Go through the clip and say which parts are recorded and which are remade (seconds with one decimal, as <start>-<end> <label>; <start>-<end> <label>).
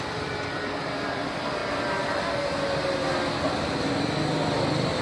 0.0-1.6 remade; 1.6-4.6 recorded; 4.6-5.0 remade